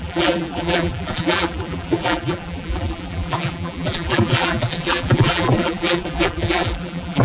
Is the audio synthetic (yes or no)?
yes